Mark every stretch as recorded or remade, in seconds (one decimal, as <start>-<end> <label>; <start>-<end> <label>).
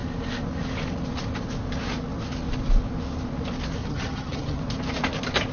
0.0-3.8 recorded; 3.8-4.6 remade; 4.6-5.5 recorded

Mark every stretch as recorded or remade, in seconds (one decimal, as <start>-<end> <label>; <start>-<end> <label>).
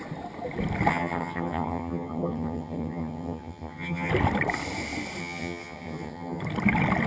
0.0-0.9 recorded; 0.9-4.1 remade; 4.1-5.2 recorded; 5.2-6.4 remade; 6.4-7.1 recorded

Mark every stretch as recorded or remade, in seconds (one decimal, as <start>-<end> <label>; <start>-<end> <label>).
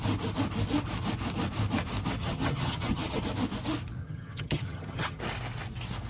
0.0-2.2 recorded; 2.2-3.2 remade; 3.2-4.0 recorded; 4.0-5.2 remade; 5.2-6.1 recorded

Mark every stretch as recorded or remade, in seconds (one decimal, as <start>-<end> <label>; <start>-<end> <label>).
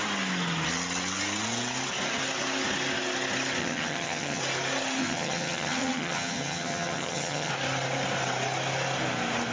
0.0-3.6 recorded; 3.6-4.4 remade; 4.4-5.0 recorded; 5.0-7.5 remade; 7.5-9.5 recorded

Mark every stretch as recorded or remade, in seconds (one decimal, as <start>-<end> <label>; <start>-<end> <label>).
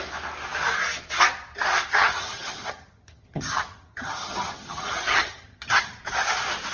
0.0-2.0 recorded; 2.0-6.0 remade; 6.0-6.7 recorded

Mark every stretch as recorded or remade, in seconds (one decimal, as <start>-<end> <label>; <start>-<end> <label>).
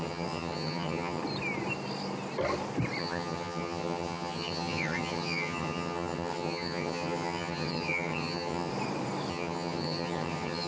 0.0-1.2 remade; 1.2-3.0 recorded; 3.0-8.7 remade; 8.7-9.3 recorded; 9.3-10.7 remade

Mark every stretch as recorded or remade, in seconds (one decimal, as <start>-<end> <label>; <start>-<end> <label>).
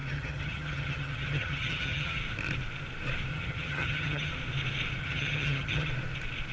0.0-2.2 remade; 2.2-3.3 recorded; 3.3-4.3 remade; 4.3-5.0 recorded; 5.0-5.9 remade; 5.9-6.5 recorded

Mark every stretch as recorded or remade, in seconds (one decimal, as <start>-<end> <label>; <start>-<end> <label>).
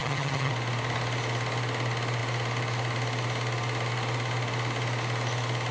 0.0-0.5 remade; 0.5-5.7 recorded